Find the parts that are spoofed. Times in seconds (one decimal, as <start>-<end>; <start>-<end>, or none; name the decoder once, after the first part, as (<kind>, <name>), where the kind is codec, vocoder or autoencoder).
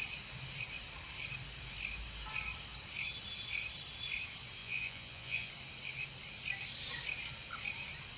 4.6-5.5 (vocoder, Vocos)